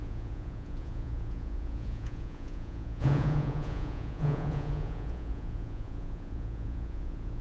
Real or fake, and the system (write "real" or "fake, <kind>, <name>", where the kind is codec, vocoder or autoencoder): fake, vocoder, Vocos